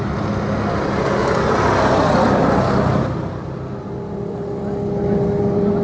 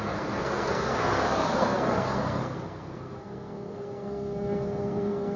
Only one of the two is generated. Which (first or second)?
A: second